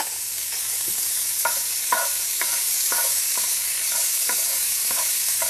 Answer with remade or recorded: remade